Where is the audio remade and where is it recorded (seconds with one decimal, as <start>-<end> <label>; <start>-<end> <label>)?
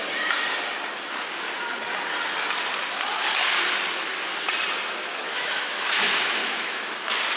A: 0.0-5.1 recorded; 5.1-5.8 remade; 5.8-6.4 recorded; 6.4-7.0 remade; 7.0-7.4 recorded